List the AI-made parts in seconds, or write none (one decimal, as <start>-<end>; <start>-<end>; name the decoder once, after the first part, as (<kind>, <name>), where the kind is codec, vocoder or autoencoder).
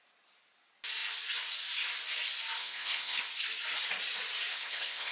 2.6-3.2 (codec, HILCodec); 4.5-5.1